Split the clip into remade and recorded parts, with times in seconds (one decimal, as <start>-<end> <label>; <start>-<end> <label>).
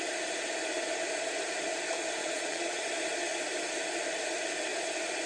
0.0-2.2 recorded; 2.2-2.8 remade; 2.8-5.3 recorded